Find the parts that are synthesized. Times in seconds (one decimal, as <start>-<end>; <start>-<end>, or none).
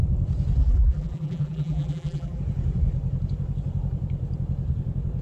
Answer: 0.6-2.4